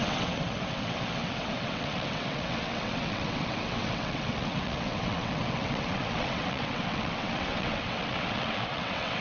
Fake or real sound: fake